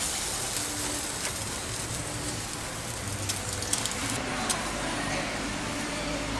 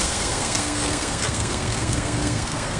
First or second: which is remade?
second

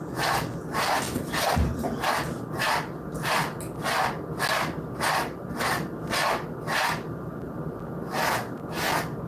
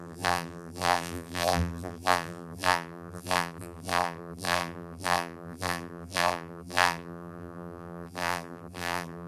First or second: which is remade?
second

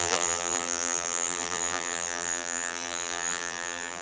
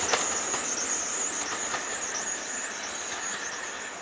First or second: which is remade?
first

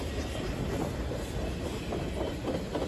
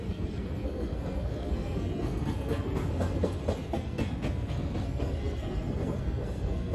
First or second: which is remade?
second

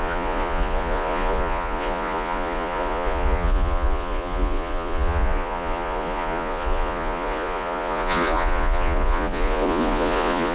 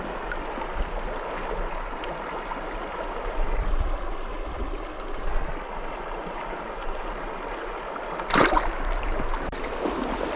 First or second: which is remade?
first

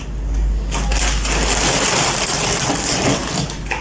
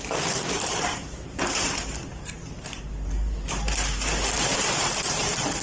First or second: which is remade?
second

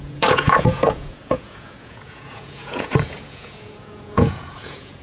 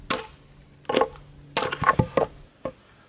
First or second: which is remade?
first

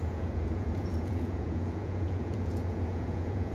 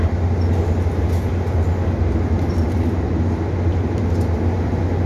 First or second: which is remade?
first